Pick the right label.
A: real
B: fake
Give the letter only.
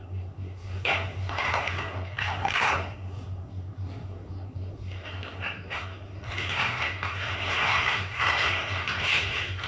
B